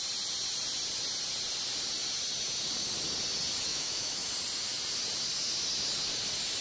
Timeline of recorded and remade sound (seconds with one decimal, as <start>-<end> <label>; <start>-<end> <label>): 0.0-3.7 recorded; 3.7-4.3 remade; 4.3-6.6 recorded